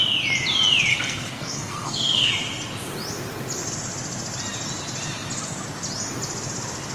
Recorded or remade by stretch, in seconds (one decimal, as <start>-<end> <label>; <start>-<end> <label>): 0.0-0.9 recorded; 0.9-2.3 remade; 2.3-6.9 recorded